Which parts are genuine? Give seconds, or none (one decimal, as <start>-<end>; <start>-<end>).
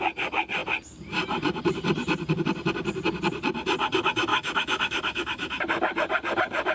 0.0-4.3; 5.6-6.7